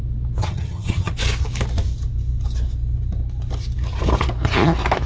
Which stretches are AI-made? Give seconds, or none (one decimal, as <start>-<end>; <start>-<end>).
0.4-1.1